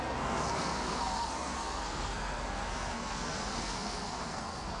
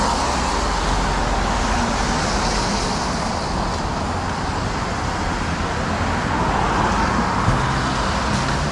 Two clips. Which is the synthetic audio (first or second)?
first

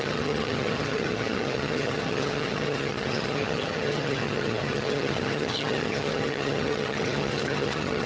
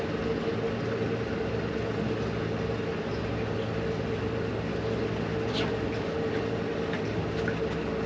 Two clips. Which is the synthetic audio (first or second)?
first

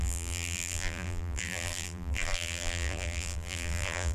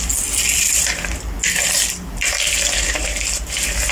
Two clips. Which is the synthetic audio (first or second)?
first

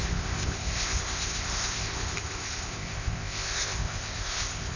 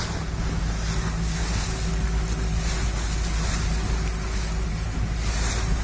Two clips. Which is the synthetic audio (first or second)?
first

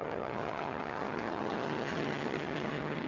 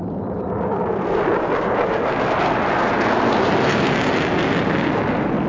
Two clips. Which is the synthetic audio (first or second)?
first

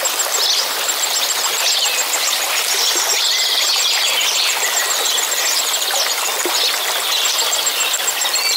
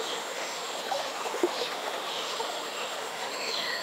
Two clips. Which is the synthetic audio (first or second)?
second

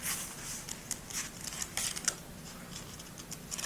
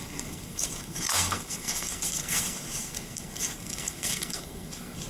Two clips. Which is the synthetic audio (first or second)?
second